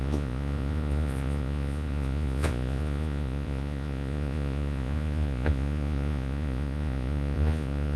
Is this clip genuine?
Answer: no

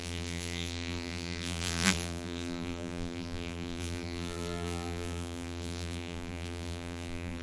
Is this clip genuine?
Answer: no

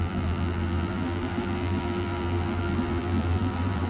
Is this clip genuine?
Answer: no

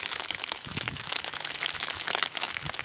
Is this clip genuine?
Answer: no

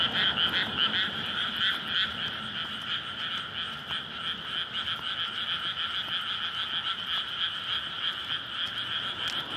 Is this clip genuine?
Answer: yes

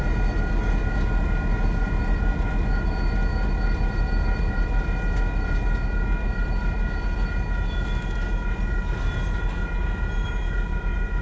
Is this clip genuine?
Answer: yes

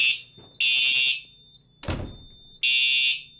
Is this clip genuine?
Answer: yes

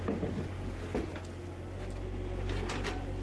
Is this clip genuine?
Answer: yes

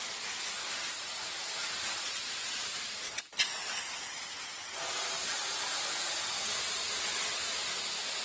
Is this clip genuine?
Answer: yes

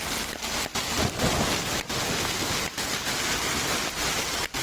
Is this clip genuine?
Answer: yes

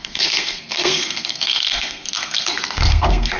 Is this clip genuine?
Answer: no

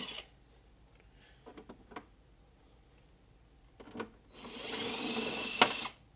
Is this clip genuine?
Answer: yes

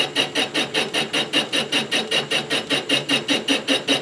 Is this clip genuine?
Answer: yes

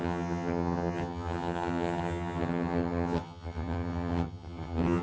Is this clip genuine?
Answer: no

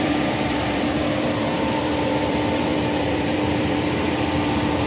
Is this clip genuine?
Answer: no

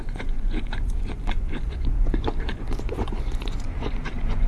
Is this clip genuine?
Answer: no